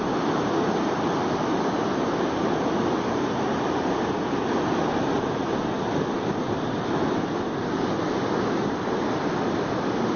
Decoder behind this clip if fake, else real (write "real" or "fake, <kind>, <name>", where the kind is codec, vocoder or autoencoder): real